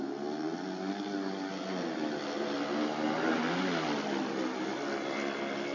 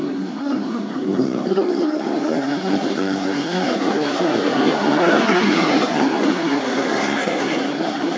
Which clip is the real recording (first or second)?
first